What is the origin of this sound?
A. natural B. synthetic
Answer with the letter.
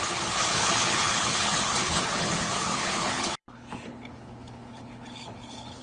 B